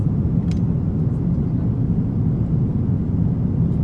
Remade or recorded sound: recorded